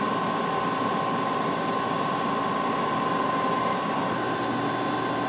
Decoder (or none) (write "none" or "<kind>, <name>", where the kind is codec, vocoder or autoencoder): none